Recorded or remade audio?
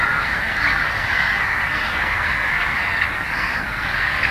remade